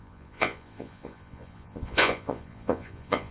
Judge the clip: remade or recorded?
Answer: remade